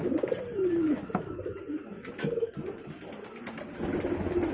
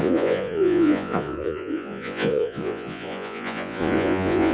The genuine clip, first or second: first